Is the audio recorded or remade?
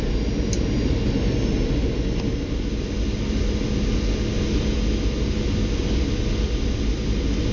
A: recorded